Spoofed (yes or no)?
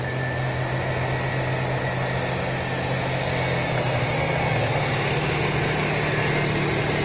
no